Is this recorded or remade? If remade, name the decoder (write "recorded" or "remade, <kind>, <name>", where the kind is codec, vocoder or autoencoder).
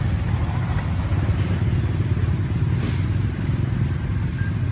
recorded